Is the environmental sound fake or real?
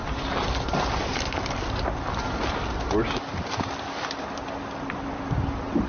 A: real